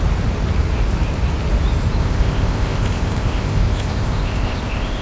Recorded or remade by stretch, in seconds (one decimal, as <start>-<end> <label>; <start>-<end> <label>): 0.0-2.0 recorded; 2.0-5.0 remade